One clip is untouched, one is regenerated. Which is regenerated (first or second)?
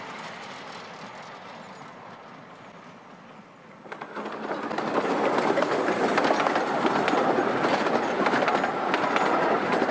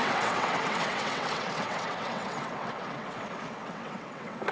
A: second